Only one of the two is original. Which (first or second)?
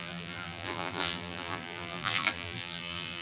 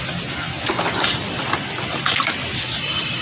second